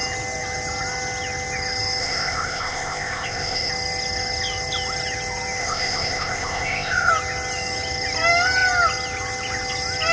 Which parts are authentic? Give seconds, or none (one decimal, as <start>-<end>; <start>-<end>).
0.0-2.0; 3.7-5.6; 7.1-10.1